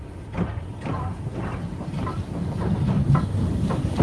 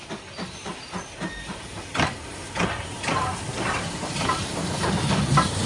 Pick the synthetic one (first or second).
first